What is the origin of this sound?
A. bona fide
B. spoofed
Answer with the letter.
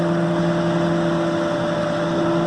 A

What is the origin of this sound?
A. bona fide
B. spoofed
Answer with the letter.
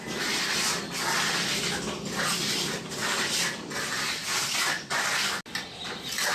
A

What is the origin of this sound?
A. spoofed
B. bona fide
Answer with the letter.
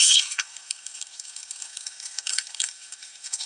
A